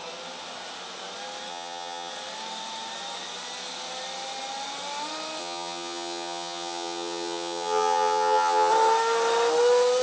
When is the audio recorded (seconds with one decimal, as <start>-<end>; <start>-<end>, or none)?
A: 0.0-1.5; 2.1-5.4; 8.7-10.0